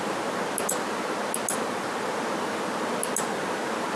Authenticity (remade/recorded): recorded